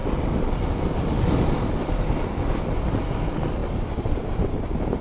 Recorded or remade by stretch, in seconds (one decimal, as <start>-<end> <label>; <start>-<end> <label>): 0.0-5.0 recorded